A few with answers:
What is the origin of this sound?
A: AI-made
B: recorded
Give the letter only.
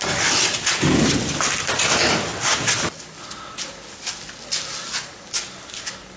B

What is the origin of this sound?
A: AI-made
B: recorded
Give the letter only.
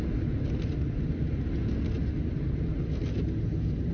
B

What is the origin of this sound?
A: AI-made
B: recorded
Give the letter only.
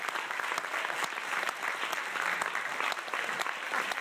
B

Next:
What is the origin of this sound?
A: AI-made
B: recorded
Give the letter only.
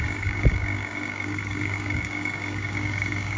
A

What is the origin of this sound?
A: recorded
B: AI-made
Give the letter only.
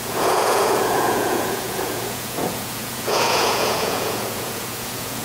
B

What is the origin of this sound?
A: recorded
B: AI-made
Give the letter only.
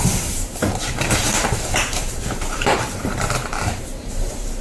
B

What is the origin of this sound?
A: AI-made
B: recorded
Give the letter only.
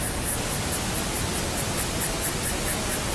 B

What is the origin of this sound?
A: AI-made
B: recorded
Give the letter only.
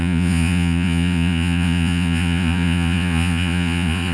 A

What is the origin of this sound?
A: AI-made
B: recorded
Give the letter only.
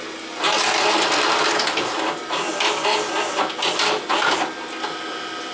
B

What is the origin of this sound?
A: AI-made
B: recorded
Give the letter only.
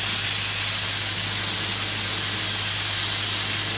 B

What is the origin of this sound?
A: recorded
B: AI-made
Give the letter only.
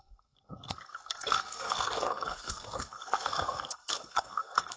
B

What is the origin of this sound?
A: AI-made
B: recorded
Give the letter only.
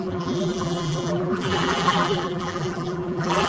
A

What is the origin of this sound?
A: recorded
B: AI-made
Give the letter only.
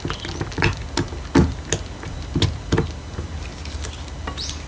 A